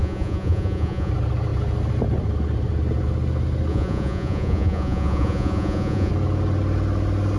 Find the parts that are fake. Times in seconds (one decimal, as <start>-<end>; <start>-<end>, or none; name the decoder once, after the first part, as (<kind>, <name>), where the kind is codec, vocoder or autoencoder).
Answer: 0.0-1.1 (vocoder, Vocos); 3.7-6.1